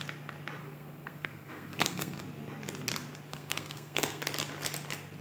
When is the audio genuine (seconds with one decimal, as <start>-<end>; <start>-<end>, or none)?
0.0-0.6; 2.2-3.3; 4.2-5.2